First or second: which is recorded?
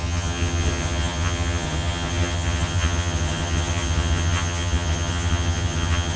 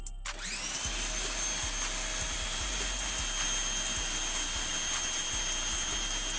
second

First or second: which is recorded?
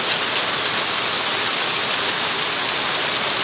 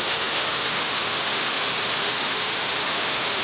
first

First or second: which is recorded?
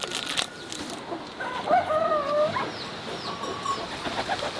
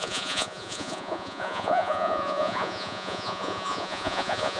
first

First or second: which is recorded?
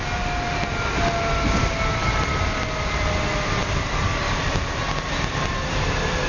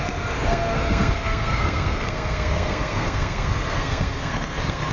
first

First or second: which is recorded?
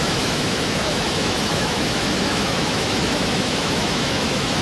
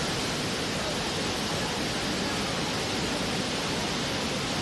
second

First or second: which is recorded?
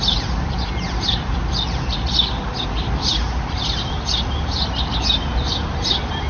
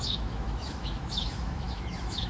first